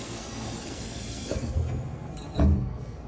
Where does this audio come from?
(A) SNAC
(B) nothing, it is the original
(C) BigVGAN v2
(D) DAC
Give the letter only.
A